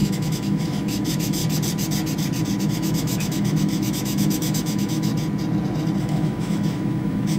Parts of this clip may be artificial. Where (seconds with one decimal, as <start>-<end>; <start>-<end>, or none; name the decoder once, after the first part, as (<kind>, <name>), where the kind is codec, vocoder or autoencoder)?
0.0-1.4 (autoencoder, DAC-VAE); 2.6-5.1; 6.0-7.4